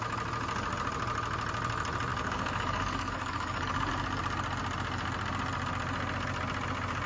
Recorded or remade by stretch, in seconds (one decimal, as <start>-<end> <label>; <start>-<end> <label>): 0.0-2.1 recorded; 2.1-3.9 remade; 3.9-7.1 recorded